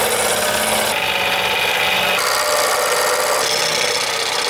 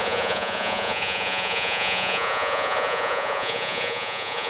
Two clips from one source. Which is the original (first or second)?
first